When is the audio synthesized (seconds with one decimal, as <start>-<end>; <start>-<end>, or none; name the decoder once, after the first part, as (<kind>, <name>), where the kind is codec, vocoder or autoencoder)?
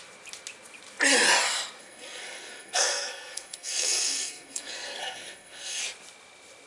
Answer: 1.8-5.8 (codec, SNAC)